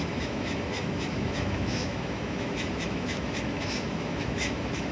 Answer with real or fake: fake